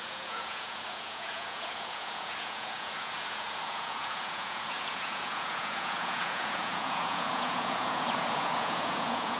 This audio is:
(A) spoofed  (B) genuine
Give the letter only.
A